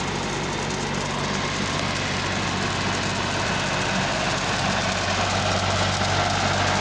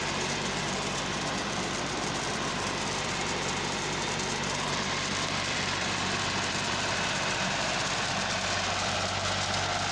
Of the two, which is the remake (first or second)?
second